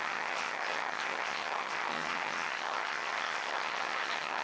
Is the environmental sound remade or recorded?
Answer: remade